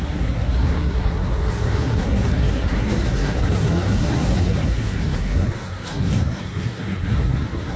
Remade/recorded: remade